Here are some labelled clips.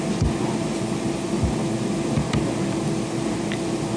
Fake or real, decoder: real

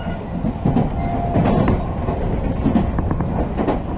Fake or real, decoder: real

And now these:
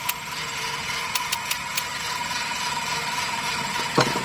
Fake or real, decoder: fake, vocoder, Vocos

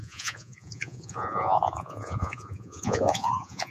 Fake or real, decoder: fake, vocoder, Vocos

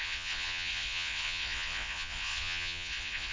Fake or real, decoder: fake, vocoder, Vocos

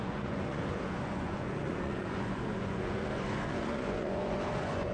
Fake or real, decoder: fake, vocoder, Vocos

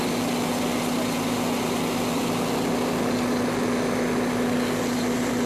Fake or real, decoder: real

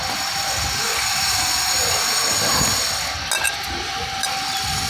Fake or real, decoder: real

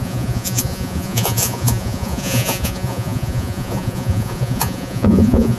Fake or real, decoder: fake, vocoder, Vocos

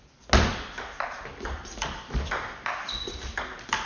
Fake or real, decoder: real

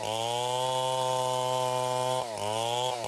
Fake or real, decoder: real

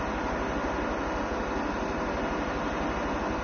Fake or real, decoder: real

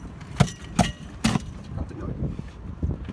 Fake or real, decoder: real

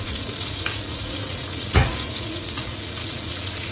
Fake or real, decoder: fake, vocoder, Vocos